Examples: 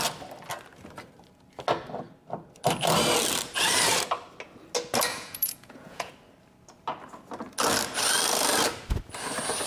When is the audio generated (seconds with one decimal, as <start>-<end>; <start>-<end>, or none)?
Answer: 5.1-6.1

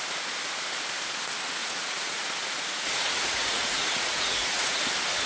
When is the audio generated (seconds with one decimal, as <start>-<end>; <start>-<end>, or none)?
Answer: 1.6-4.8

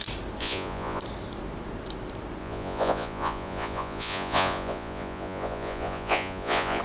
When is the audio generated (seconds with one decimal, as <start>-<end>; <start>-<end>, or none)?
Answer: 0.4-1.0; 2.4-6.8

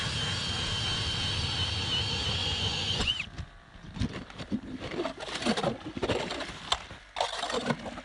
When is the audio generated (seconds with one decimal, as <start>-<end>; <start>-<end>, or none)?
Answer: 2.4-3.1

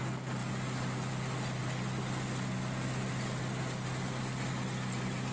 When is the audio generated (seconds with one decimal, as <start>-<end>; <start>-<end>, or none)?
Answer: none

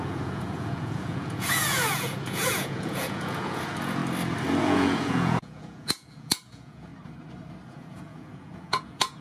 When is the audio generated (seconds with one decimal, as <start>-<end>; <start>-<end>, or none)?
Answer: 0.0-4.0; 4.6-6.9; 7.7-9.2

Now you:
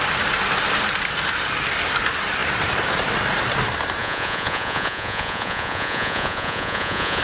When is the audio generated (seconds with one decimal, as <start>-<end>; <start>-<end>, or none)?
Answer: 4.0-7.2

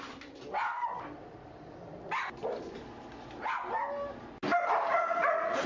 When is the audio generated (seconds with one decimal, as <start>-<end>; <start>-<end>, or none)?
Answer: 4.9-5.7